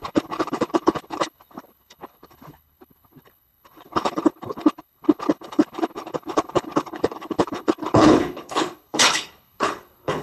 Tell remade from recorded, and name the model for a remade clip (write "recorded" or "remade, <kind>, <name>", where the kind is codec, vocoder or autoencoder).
remade, codec, HILCodec